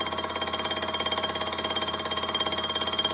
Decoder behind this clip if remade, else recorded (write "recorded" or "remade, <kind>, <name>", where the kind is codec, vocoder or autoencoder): recorded